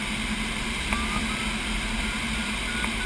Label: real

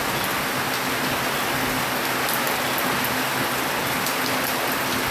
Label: real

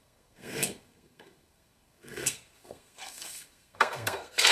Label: fake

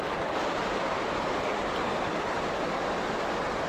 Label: real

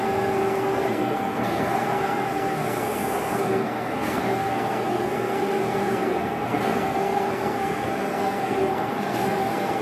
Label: fake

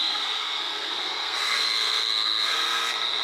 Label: fake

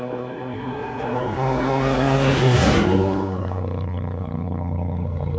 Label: fake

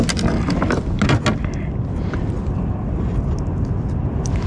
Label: real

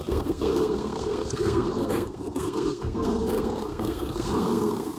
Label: fake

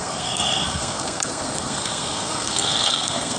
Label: fake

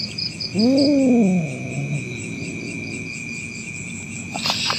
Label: real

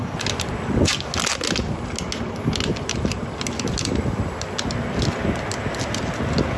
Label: real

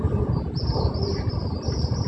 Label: real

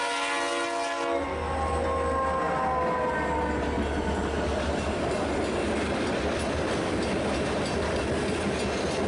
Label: real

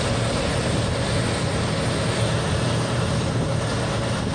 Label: real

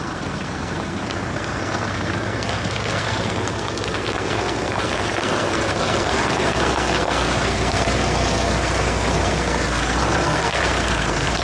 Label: fake